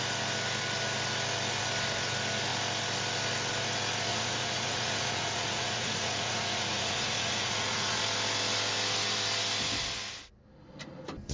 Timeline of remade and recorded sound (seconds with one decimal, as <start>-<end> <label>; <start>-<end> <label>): 0.0-4.1 recorded; 4.1-8.0 remade; 8.0-11.3 recorded